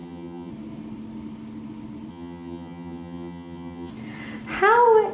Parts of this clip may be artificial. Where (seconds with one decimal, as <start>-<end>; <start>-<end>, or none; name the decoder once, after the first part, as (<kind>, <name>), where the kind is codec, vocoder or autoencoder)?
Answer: 0.0-0.5 (vocoder, HiFi-GAN); 2.1-3.9